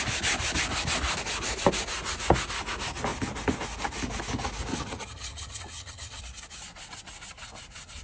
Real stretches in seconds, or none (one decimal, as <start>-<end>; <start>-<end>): 0.0-4.7; 6.2-8.0